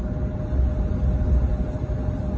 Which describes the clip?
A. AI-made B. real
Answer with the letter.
B